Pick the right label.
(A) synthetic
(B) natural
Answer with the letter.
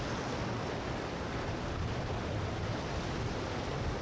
B